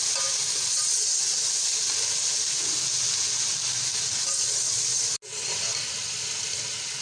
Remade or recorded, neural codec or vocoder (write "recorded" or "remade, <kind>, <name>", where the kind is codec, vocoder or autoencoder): recorded